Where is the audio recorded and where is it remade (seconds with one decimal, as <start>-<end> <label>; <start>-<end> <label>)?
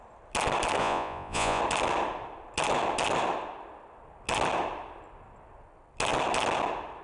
0.0-0.8 recorded; 0.8-1.6 remade; 1.6-7.0 recorded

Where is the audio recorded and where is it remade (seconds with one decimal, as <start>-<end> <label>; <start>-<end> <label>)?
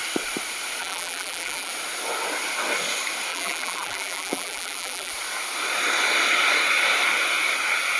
0.0-0.8 recorded; 0.8-1.7 remade; 1.7-3.3 recorded; 3.3-5.1 remade; 5.1-8.0 recorded